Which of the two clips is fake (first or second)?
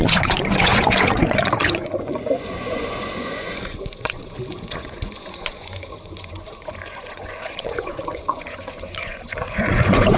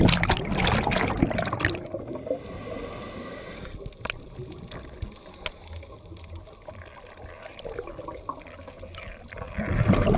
first